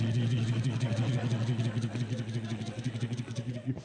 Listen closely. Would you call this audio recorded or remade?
recorded